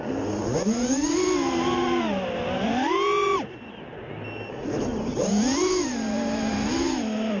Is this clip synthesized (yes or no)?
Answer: no